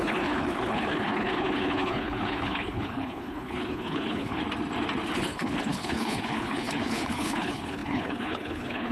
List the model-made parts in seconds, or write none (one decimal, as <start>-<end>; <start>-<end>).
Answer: 0.0-4.4; 5.1-8.9